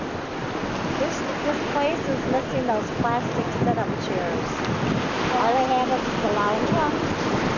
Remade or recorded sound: recorded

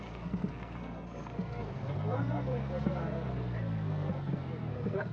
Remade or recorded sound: remade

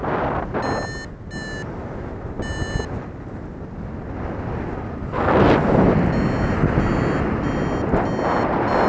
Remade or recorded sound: recorded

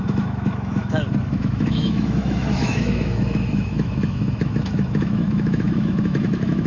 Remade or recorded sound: remade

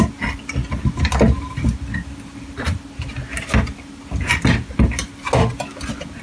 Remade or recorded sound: recorded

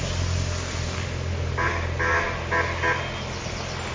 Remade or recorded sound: recorded